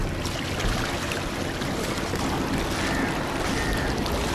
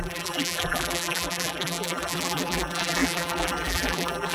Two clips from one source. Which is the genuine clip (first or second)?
first